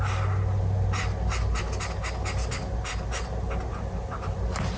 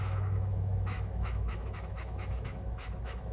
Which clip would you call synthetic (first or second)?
second